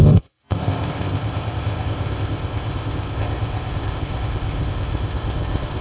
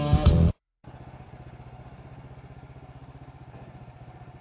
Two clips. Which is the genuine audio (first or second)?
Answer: second